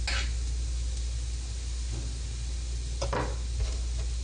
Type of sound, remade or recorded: recorded